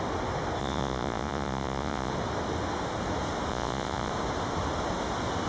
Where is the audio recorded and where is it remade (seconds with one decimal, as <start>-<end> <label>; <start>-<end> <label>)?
0.0-0.6 recorded; 0.6-2.1 remade; 2.1-3.5 recorded; 3.5-4.1 remade; 4.1-5.5 recorded